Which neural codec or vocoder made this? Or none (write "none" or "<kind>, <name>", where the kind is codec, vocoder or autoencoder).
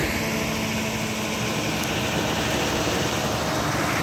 none